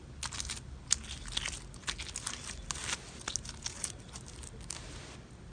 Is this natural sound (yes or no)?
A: yes